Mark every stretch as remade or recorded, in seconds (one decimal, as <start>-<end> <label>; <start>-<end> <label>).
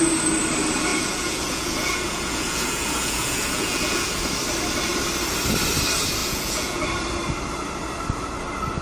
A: 0.0-0.9 recorded; 0.9-4.3 remade; 4.3-6.2 recorded; 6.2-6.8 remade; 6.8-8.8 recorded